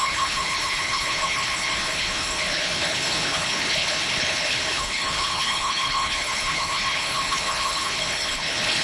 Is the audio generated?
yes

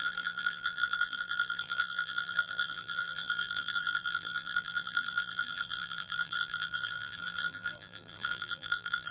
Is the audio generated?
yes